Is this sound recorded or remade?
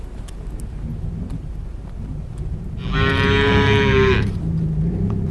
remade